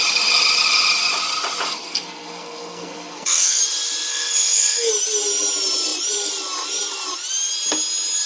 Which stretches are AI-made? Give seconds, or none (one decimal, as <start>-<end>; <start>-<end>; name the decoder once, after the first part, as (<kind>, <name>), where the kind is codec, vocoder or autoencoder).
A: 1.8-3.6 (codec, SNAC); 4.1-4.9